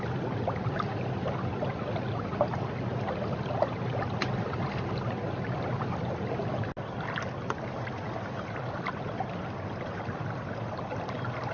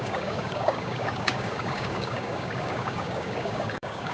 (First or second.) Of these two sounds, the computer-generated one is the second